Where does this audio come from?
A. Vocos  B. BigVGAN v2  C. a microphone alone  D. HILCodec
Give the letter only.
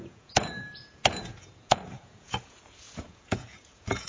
A